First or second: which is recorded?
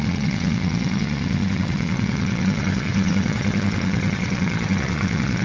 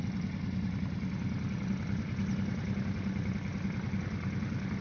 second